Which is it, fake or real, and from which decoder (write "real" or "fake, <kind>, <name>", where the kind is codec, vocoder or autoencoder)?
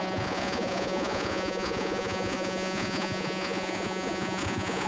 fake, vocoder, Vocos